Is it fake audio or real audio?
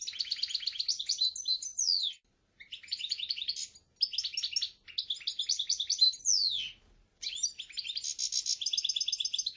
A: real